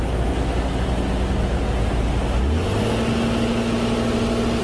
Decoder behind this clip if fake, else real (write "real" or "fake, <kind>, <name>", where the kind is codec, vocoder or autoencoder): real